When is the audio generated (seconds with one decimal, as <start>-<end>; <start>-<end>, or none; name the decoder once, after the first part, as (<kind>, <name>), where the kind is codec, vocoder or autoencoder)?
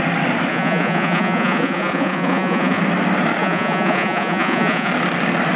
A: 0.5-2.8 (vocoder, Vocos); 3.4-4.9